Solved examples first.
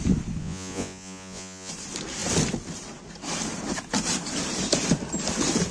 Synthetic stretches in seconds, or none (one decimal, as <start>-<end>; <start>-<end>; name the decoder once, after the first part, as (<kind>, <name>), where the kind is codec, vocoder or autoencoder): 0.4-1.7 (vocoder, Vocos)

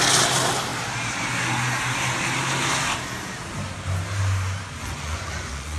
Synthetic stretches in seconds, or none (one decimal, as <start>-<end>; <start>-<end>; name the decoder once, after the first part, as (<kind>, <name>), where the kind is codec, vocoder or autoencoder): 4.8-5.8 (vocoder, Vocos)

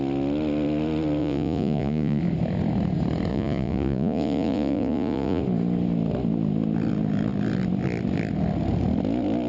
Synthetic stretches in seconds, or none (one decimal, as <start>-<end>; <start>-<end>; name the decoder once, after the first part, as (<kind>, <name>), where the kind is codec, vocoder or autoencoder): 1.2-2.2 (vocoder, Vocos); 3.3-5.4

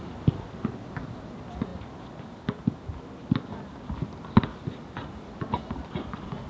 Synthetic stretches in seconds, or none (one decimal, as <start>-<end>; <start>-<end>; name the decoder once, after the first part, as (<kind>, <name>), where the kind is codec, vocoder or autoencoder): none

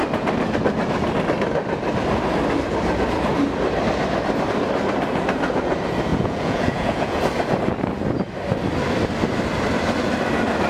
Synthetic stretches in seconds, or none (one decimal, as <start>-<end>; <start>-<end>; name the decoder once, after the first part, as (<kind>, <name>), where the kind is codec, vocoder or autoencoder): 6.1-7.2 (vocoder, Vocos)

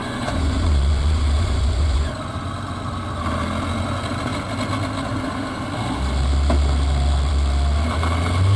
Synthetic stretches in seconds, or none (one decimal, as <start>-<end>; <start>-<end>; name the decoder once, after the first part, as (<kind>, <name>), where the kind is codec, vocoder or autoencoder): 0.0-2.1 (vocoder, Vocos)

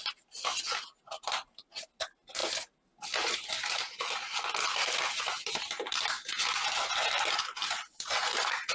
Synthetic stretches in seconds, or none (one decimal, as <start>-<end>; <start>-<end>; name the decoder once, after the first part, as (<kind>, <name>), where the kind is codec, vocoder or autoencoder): none

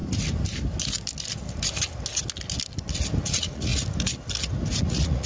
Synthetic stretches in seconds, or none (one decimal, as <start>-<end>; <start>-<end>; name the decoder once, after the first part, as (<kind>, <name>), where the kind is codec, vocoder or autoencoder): 3.2-3.7 (vocoder, Vocos); 4.8-5.3